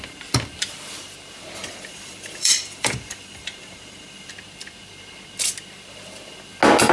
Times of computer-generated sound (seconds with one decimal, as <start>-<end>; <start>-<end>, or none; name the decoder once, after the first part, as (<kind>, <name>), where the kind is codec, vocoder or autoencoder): 1.6-4.3 (vocoder, BigVGAN v2)